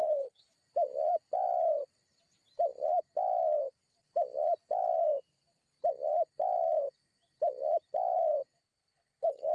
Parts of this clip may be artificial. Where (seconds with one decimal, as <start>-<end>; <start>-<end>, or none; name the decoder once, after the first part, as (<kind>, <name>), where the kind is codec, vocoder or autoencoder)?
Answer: 0.0-0.5 (codec, HILCodec); 8.6-9.5